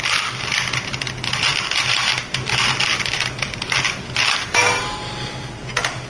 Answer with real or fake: real